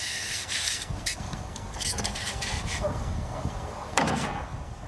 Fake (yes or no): yes